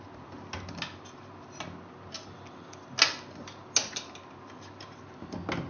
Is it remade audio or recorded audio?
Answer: recorded